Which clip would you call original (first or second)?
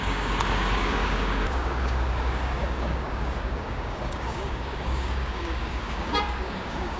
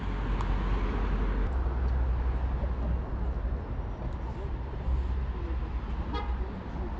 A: second